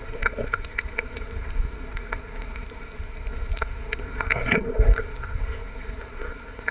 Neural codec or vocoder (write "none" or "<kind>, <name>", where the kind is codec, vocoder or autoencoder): codec, SNAC